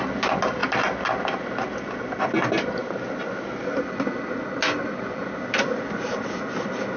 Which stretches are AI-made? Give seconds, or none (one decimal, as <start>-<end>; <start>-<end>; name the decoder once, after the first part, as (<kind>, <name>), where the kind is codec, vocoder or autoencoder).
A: none